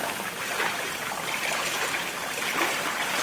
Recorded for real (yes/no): no